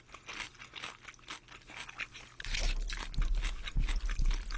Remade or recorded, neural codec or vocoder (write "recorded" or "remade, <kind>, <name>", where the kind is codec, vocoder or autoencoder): recorded